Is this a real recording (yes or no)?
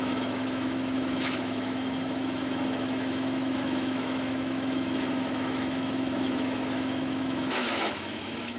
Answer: no